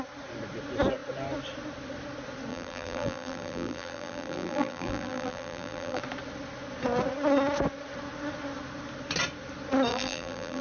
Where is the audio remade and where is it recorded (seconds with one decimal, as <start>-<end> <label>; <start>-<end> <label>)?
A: 0.0-2.5 recorded; 2.5-6.0 remade; 6.0-9.9 recorded; 9.9-10.6 remade